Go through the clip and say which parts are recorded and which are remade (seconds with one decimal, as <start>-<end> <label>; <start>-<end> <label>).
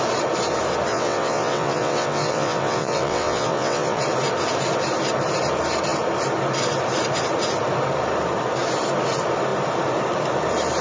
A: 0.0-0.9 recorded; 0.9-4.0 remade; 4.0-10.8 recorded